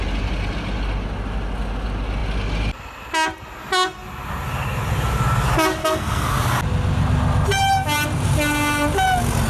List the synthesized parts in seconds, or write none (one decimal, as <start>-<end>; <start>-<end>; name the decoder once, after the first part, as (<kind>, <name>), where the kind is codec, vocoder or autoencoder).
5.8-6.4 (codec, SNAC)